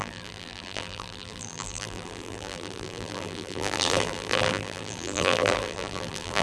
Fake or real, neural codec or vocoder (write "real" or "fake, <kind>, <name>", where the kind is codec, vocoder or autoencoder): fake, vocoder, BigVGAN v2